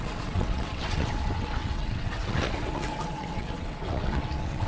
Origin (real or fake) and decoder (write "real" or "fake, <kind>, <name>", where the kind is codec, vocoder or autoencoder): fake, vocoder, WaveNeXt